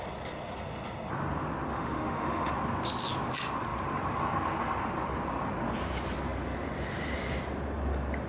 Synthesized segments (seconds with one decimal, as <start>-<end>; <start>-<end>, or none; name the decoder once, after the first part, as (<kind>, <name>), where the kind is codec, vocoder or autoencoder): 1.7-2.5 (autoencoder, DAC-VAE)